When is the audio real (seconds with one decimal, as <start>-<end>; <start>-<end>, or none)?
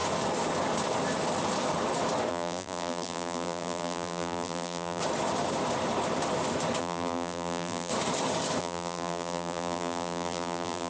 0.0-2.3; 5.0-6.8; 7.9-8.6